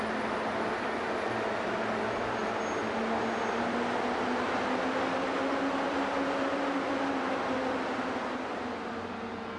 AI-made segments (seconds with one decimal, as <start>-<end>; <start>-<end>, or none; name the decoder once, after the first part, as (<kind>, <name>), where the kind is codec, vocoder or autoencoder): none